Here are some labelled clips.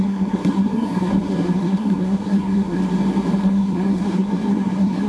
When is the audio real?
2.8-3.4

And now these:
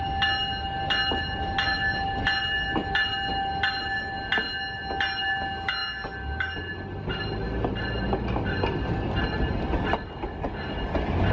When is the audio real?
0.0-11.3